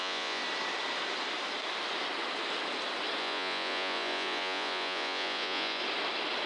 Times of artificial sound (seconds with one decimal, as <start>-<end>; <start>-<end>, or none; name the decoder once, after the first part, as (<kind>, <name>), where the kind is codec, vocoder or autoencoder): 0.0-0.4 (vocoder, Vocos); 3.2-5.8